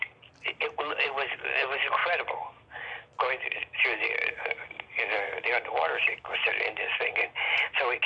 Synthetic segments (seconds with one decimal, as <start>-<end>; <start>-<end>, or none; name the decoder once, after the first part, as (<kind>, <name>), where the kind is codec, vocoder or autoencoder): none